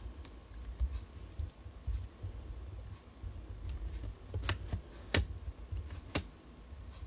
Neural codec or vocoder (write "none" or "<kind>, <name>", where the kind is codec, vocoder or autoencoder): none